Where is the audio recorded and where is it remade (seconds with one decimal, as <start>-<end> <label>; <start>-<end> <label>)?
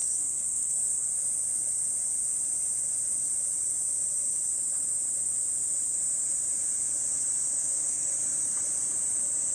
0.0-1.1 remade; 1.1-7.6 recorded; 7.6-8.1 remade; 8.1-9.5 recorded